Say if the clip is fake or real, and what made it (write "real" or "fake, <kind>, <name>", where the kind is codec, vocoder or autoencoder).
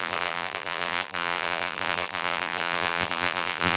fake, vocoder, BigVGAN v2